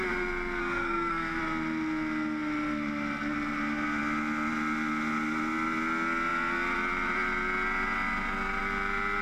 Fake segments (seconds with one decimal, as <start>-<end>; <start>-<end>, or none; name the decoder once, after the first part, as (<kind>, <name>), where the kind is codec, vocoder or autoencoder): 0.6-1.4 (codec, SNAC)